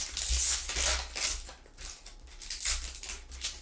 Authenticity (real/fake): real